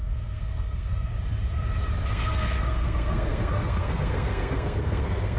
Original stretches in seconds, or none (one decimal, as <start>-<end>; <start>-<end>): 1.1-2.1